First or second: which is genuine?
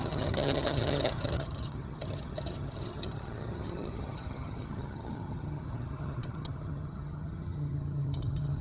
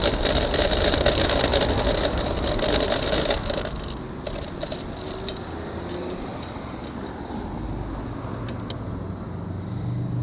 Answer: second